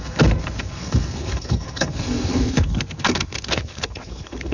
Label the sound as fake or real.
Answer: fake